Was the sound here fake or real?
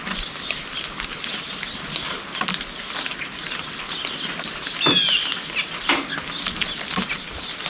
real